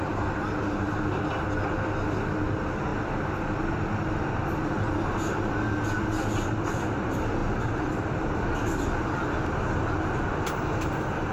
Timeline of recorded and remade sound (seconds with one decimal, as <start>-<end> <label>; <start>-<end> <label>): 0.0-11.3 recorded